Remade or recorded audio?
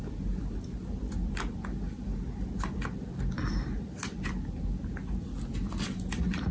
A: recorded